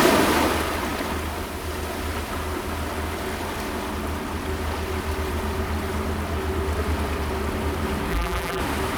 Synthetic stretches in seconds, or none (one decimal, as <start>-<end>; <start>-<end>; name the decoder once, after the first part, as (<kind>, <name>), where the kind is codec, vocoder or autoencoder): 8.1-8.6 (vocoder, BigVGAN v2)